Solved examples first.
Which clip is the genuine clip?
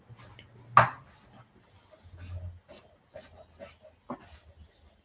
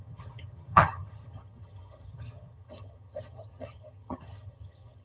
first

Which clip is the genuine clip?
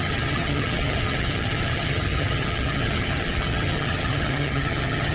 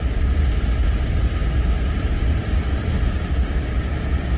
second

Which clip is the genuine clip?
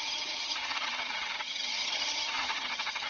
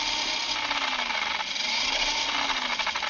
second